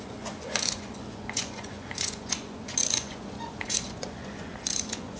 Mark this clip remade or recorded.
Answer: remade